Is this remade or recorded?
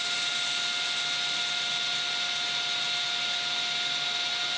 recorded